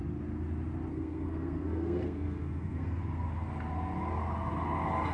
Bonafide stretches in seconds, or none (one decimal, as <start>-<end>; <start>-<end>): 0.0-0.9; 3.0-5.1